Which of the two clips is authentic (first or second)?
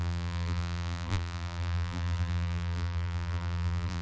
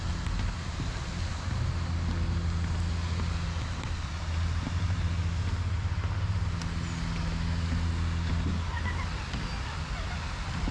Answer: second